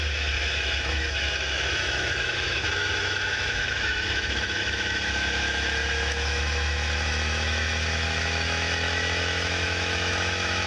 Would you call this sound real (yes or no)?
no